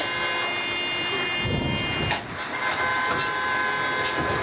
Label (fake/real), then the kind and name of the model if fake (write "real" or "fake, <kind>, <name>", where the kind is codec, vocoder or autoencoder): real